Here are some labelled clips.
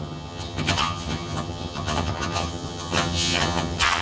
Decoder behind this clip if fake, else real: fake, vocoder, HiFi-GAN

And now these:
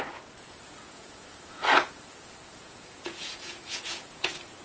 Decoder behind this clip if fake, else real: fake, vocoder, Vocos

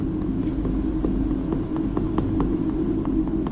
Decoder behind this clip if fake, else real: real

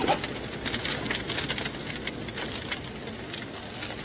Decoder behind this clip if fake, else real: real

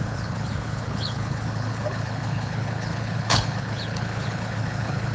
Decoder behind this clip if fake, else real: fake, codec, HILCodec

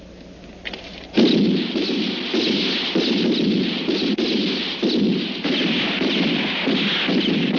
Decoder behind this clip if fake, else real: real